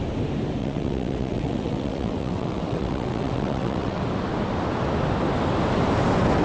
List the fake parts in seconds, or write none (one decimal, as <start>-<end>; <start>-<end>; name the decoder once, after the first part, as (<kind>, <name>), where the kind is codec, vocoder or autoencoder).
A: 0.6-4.0 (vocoder, WaveNeXt)